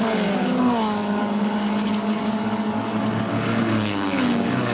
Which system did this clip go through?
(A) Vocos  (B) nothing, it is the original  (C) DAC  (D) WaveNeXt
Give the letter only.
C